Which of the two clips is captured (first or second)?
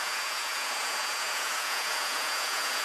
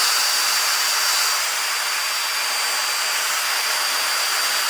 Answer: second